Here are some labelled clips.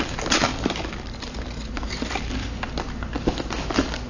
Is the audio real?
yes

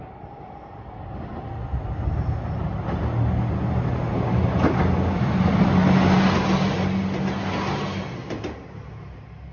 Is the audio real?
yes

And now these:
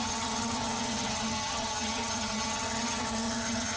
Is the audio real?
no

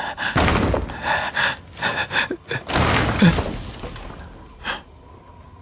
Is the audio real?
yes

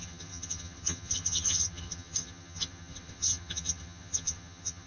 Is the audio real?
no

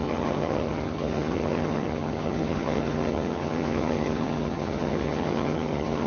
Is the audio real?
no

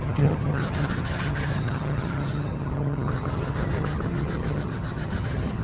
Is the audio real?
no